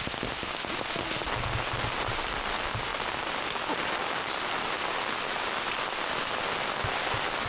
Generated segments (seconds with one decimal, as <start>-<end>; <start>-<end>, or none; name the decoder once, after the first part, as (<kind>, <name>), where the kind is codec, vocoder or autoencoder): none